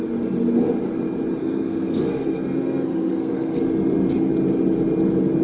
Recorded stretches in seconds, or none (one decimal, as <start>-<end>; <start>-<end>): 0.0-1.4; 3.6-5.4